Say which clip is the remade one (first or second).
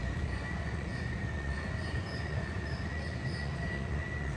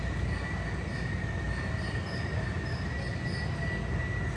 first